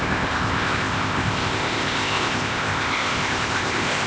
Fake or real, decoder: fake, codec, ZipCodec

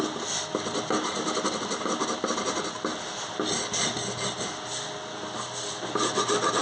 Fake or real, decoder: real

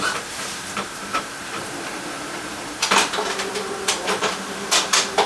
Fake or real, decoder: fake, vocoder, BigVGAN v2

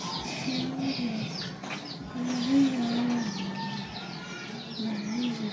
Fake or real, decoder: real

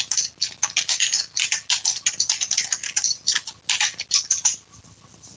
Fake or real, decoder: real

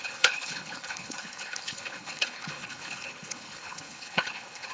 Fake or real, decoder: fake, codec, HILCodec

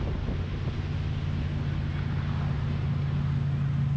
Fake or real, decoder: real